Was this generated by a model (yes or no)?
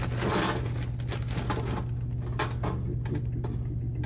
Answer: no